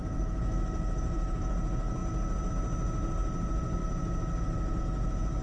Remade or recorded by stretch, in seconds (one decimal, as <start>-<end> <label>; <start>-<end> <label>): 0.0-1.5 remade; 1.5-5.4 recorded